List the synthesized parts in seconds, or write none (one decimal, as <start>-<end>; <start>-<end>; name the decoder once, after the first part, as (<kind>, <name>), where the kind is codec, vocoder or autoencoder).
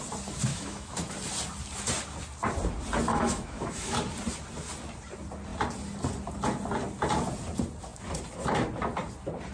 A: 0.5-1.1 (autoencoder, DAC-VAE); 3.1-4.0